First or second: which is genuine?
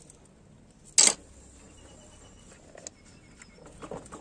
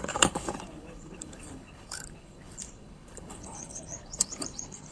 first